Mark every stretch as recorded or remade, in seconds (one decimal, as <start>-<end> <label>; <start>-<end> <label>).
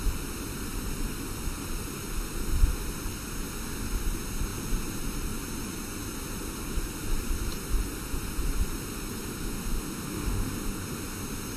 0.0-9.4 recorded; 9.4-11.0 remade; 11.0-11.6 recorded